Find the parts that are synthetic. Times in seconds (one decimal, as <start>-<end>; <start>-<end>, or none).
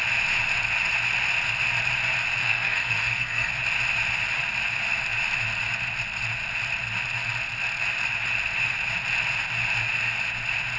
2.4-3.5